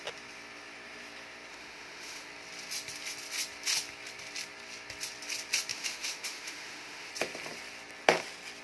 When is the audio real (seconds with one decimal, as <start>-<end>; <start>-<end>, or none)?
0.0-1.5; 2.3-5.7; 7.1-8.6